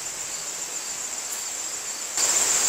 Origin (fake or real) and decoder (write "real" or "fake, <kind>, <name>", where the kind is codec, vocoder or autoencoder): real